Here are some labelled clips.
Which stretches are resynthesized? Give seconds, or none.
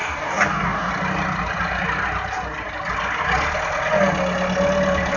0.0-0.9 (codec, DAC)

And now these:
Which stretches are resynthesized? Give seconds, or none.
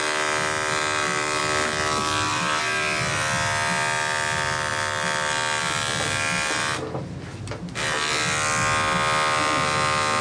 none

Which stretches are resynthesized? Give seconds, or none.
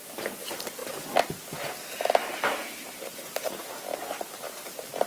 none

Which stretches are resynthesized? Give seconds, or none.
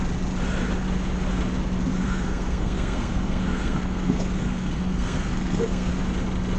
1.9-5.9 (codec, SNAC)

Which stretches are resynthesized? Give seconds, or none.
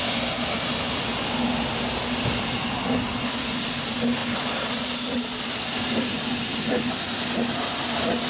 4.2-6.9 (vocoder, BigVGAN v2)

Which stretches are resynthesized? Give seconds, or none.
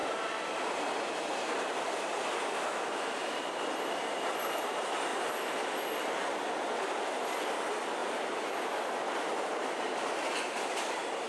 none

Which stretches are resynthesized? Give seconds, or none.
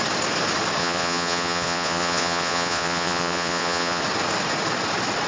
0.8-4.0 (vocoder, Vocos)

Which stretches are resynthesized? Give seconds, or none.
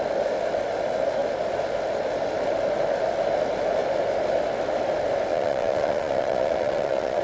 5.3-7.2 (vocoder, Vocos)